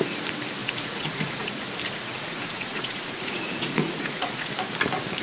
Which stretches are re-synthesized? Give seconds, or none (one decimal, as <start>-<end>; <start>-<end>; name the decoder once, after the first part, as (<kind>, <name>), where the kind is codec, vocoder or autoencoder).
0.6-1.5 (vocoder, Vocos); 1.9-4.5